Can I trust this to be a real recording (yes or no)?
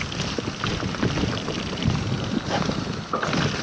yes